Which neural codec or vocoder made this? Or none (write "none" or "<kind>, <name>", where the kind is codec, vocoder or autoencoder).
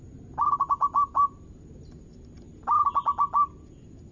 none